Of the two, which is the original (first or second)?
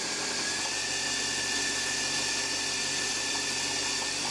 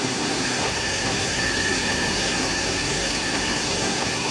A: first